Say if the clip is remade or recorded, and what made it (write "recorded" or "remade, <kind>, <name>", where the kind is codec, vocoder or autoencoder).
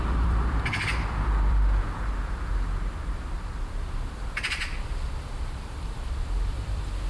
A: remade, vocoder, BigVGAN v2